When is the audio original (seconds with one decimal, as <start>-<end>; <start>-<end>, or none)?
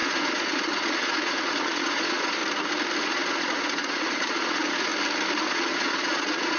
2.4-3.0; 4.9-5.4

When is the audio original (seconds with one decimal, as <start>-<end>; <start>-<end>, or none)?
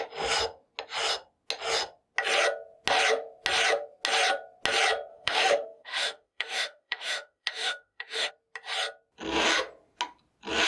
0.0-5.1; 8.3-10.7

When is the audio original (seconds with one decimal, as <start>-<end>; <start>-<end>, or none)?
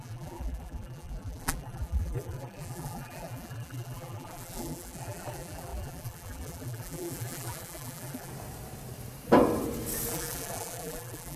8.3-10.1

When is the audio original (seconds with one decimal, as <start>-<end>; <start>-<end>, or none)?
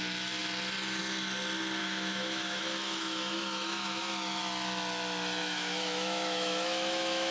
0.0-1.8; 4.4-5.4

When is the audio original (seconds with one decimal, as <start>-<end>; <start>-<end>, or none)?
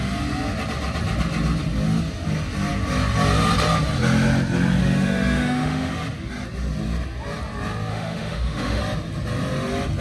0.0-4.8; 5.9-7.9; 8.8-10.0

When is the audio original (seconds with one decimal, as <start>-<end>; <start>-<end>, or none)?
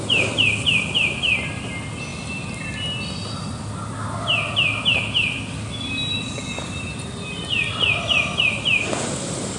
0.0-9.6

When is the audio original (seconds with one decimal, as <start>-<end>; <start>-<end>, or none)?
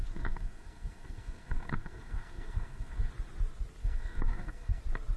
3.1-3.8; 4.8-5.2